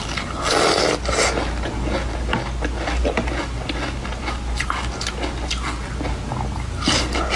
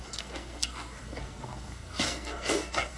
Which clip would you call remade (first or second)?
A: second